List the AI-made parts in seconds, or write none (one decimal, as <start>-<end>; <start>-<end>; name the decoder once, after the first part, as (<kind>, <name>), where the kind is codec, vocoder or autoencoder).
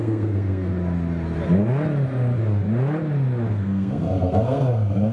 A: 0.0-0.7 (codec, SNAC); 3.5-5.1